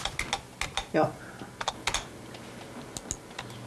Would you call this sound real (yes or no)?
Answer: yes